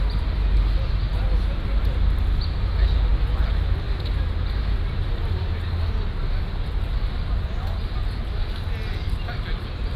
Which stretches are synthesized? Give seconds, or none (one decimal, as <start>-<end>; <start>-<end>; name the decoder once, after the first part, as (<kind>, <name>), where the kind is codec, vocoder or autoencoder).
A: none